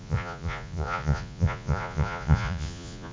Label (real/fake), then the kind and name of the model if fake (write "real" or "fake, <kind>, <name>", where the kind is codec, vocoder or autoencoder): fake, vocoder, Vocos